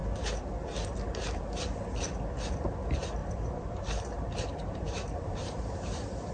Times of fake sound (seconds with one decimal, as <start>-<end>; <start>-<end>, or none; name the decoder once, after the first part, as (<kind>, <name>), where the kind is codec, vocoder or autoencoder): 3.2-6.3 (vocoder, BigVGAN v2)